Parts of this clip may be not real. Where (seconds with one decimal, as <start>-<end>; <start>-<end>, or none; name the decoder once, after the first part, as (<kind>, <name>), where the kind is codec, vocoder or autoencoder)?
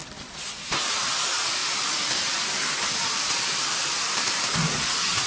1.6-4.8 (vocoder, BigVGAN v2)